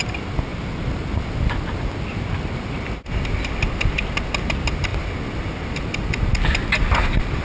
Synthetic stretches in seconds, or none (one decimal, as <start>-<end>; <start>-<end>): none